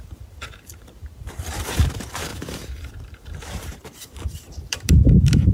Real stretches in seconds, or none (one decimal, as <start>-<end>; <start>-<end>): none